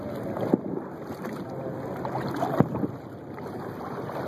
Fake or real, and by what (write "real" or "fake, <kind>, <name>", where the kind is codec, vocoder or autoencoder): real